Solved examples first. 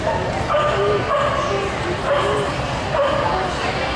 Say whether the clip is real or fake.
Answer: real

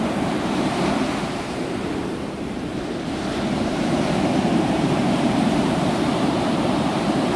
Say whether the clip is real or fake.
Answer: fake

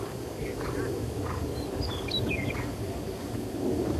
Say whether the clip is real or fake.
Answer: fake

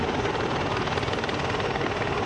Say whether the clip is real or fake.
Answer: real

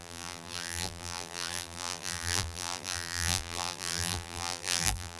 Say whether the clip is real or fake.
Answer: fake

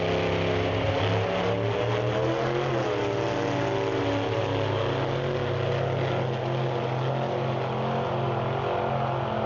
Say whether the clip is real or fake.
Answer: real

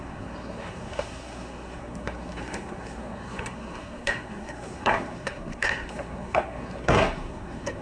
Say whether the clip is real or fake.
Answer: fake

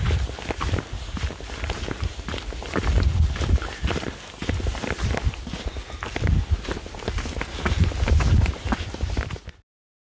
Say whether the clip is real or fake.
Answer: real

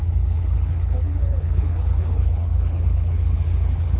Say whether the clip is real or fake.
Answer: fake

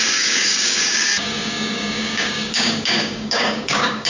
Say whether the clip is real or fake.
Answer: fake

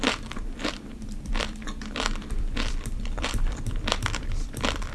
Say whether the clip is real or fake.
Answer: fake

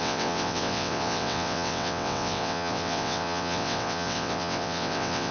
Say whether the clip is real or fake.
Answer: fake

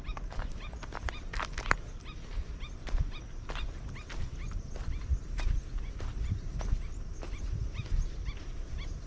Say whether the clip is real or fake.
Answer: real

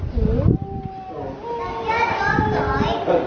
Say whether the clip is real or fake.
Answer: real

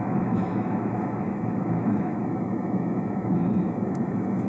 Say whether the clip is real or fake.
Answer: fake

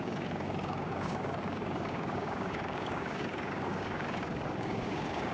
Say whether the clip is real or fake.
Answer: fake